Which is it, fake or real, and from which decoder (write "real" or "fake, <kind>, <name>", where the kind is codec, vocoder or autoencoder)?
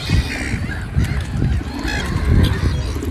real